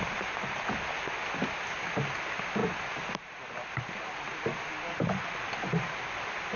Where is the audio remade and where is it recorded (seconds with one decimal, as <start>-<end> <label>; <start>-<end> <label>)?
0.0-6.6 recorded